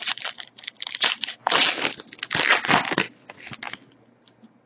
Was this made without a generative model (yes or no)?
yes